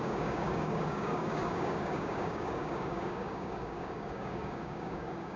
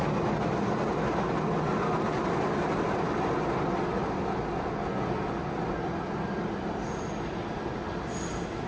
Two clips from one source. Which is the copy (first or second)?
first